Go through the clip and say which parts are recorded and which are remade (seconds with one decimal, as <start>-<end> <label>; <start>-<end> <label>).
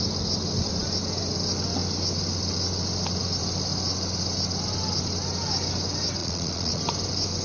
0.0-6.2 recorded; 6.2-6.8 remade; 6.8-7.4 recorded